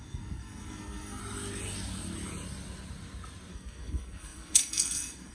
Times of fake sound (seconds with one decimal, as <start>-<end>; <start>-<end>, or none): 0.0-1.2; 3.5-5.3